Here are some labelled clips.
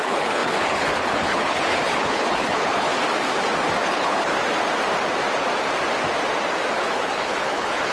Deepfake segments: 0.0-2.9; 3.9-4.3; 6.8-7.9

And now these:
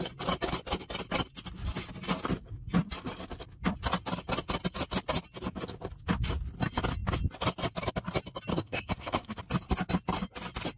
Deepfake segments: 8.5-9.4

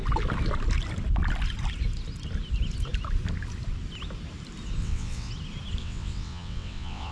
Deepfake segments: 4.8-5.3; 5.8-7.1

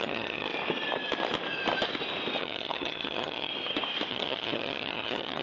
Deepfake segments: 0.0-0.5; 2.4-3.5; 4.1-5.4